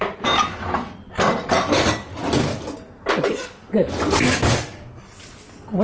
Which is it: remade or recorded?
recorded